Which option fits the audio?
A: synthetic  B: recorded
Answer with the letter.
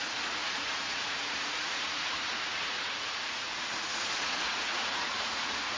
A